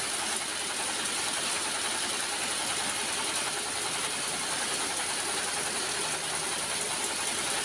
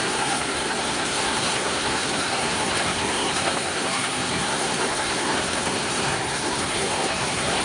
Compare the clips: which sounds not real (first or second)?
second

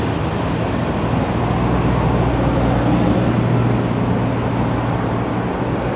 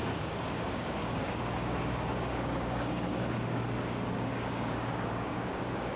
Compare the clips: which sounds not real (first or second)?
second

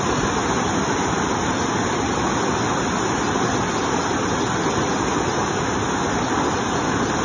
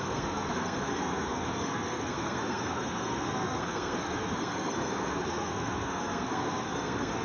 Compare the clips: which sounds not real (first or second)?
second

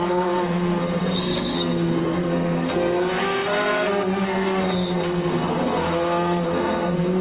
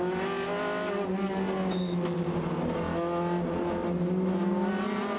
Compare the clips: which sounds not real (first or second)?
first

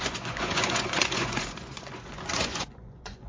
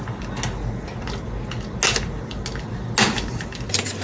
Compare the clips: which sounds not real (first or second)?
first